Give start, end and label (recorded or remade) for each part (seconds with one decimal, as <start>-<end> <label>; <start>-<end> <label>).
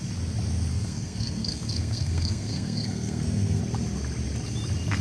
0.0-0.7 recorded; 0.7-3.6 remade; 3.6-5.0 recorded